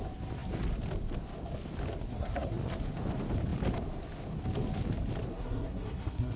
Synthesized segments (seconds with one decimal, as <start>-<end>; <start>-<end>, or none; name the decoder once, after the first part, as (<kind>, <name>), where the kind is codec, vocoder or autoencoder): 2.1-2.6 (codec, SNAC); 5.3-6.4

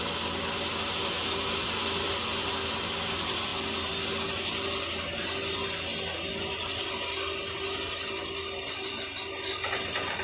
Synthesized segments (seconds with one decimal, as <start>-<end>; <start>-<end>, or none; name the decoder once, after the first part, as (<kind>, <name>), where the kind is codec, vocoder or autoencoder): none